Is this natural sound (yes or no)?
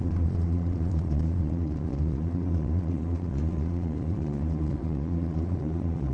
no